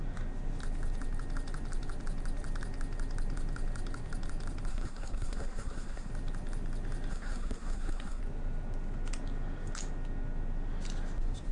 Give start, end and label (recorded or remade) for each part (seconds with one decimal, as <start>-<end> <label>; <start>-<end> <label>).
0.0-4.7 recorded; 4.7-6.1 remade; 6.1-7.1 recorded; 7.1-8.2 remade; 8.2-11.5 recorded

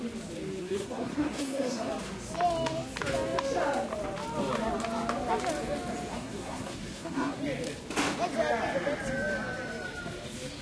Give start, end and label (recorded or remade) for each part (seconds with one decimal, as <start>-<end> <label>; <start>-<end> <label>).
0.0-0.6 recorded; 0.6-1.9 remade; 1.9-6.1 recorded; 6.1-7.4 remade; 7.4-10.6 recorded